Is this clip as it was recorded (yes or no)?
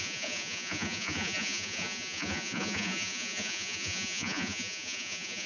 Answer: no